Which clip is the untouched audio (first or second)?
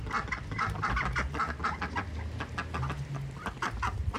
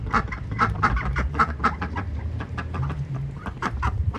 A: first